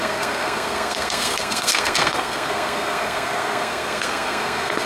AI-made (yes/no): yes